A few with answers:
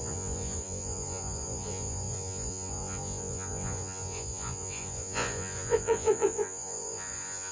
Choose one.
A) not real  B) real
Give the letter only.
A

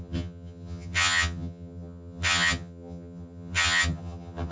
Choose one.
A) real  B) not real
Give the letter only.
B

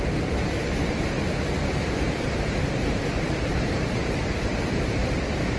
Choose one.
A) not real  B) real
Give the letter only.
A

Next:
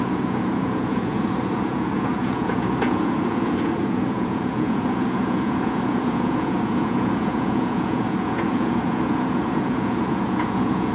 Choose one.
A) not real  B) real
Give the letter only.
A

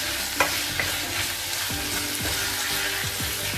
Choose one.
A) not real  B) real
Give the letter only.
B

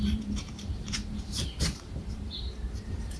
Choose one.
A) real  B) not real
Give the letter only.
B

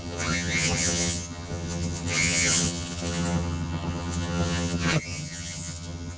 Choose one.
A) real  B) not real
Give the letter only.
B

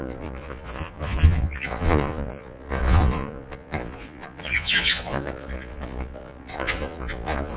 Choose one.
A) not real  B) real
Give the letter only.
A